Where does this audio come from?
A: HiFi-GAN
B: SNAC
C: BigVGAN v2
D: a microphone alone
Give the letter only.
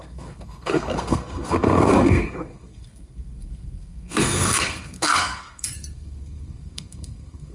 B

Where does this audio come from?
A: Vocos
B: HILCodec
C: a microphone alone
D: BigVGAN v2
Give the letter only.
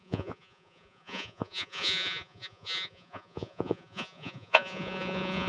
A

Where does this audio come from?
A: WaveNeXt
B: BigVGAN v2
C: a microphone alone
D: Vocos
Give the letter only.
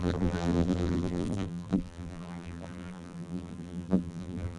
B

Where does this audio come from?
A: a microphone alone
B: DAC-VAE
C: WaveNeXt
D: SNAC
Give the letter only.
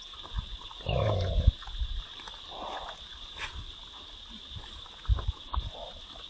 A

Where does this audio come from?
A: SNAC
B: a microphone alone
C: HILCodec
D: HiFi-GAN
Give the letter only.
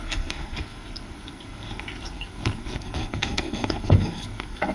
A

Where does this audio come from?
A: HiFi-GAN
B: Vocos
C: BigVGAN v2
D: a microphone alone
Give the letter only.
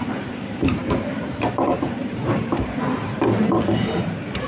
C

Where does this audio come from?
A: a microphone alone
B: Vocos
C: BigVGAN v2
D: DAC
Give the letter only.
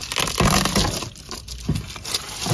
A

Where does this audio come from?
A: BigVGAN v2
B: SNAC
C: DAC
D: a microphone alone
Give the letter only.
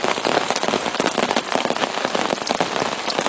D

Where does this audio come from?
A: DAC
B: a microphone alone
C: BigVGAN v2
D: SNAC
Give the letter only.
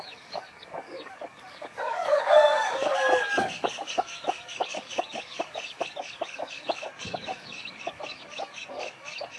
A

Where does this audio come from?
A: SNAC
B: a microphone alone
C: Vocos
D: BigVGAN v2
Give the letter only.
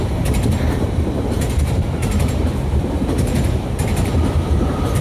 D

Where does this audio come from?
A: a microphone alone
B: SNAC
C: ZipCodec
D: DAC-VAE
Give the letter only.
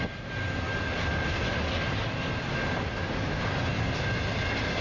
A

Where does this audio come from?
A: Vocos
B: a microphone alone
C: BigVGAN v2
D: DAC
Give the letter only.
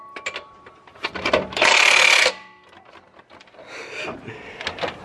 B